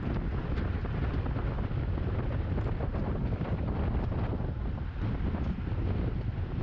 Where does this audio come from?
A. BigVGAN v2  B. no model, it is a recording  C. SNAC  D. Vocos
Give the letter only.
B